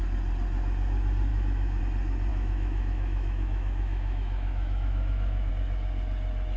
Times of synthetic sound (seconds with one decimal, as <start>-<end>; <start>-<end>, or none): 1.3-1.8; 2.3-5.5